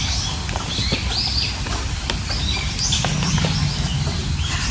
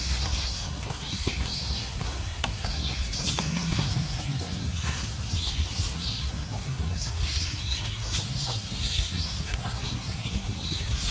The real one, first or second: first